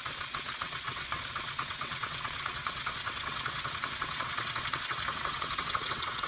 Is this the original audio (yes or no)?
no